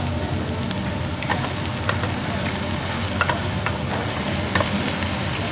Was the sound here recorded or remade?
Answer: recorded